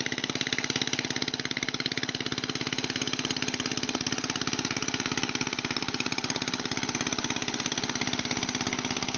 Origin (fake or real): real